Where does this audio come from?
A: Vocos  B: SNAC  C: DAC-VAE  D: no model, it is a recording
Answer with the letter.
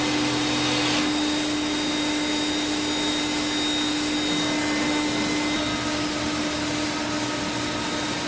D